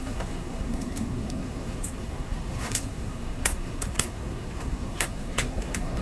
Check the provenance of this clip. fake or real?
fake